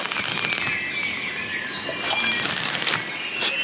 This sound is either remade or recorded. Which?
recorded